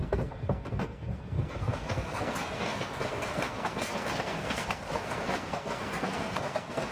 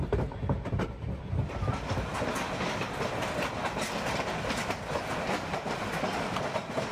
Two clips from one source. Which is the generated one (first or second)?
first